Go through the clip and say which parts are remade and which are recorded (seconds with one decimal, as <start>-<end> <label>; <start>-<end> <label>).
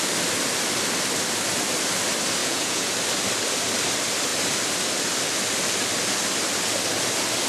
0.0-2.4 recorded; 2.4-2.9 remade; 2.9-7.5 recorded